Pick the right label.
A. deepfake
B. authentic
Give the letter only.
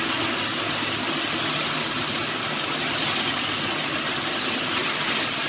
B